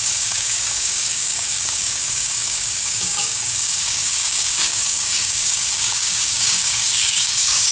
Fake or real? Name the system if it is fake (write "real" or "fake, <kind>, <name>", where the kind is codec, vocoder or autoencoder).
fake, codec, DAC